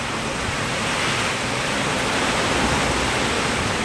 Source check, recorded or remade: recorded